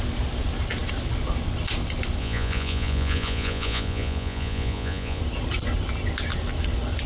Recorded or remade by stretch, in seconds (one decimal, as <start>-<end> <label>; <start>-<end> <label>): 0.0-2.2 recorded; 2.2-5.2 remade; 5.2-7.1 recorded